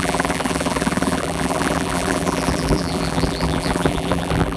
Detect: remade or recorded remade